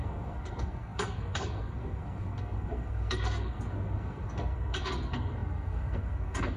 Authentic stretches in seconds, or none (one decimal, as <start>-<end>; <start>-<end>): none